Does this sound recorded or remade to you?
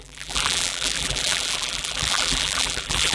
remade